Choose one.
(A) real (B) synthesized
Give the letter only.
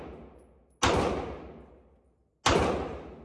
A